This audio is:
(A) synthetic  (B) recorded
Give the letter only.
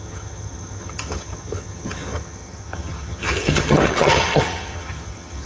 A